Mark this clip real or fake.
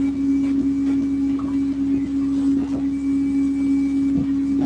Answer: real